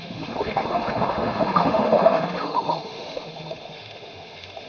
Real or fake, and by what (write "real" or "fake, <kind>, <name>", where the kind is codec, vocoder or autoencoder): fake, autoencoder, DAC-VAE